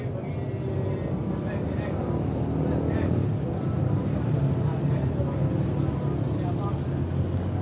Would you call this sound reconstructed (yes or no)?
no